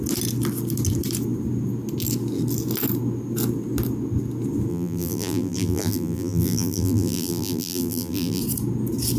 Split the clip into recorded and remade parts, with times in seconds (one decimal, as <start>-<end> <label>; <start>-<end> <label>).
0.0-4.7 recorded; 4.7-8.4 remade; 8.4-9.2 recorded